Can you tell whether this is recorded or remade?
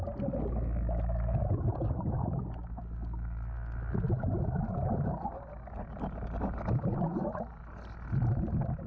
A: recorded